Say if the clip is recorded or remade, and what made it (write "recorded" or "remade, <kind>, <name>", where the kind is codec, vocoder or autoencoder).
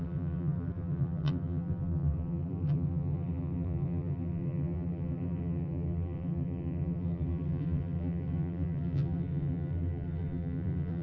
remade, vocoder, BigVGAN v2